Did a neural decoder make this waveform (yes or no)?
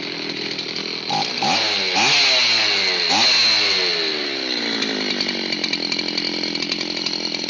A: no